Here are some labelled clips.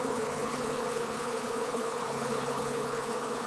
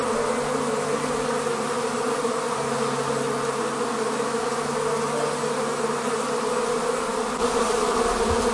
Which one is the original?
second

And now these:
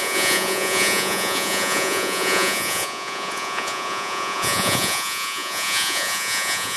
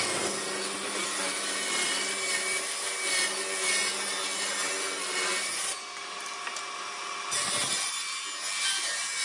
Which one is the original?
second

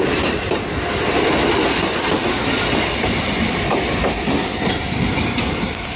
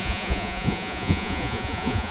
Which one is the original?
first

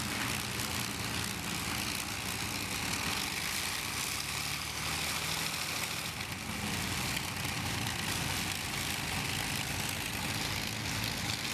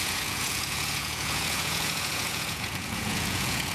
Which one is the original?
first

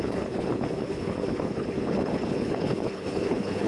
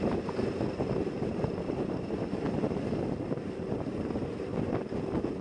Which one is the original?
second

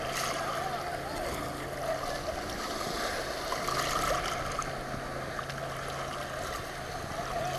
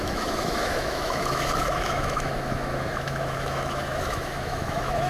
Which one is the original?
first